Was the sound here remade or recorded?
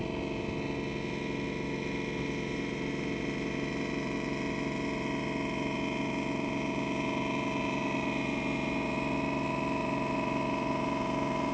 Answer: recorded